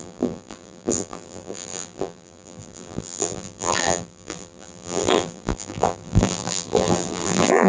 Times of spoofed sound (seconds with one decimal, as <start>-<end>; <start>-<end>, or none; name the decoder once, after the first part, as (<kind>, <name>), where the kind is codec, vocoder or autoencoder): 0.0-7.7 (vocoder, BigVGAN v2)